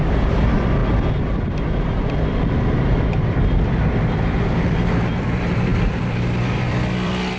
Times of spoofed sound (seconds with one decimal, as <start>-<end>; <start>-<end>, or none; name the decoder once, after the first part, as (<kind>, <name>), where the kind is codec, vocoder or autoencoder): 0.0-0.8 (vocoder, BigVGAN v2); 5.2-7.4